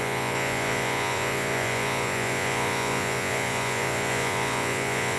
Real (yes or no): no